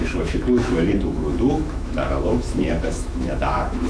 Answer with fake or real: fake